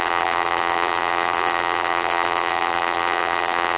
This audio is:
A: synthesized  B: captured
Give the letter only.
A